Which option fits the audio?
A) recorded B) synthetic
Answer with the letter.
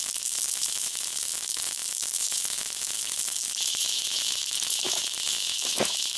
B